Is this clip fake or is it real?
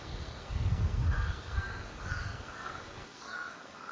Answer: fake